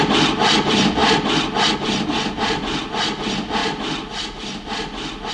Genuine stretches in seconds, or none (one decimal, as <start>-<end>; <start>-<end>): 0.0-5.3